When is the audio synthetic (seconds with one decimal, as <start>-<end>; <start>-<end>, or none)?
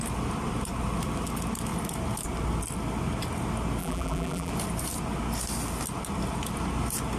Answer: 3.8-4.5